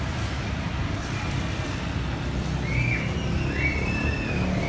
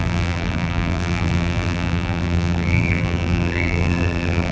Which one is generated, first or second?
second